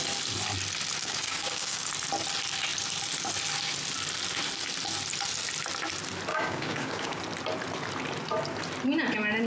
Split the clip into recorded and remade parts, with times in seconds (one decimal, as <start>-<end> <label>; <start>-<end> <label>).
0.0-1.0 recorded; 1.0-1.9 remade; 1.9-6.3 recorded; 6.3-7.2 remade; 7.2-9.5 recorded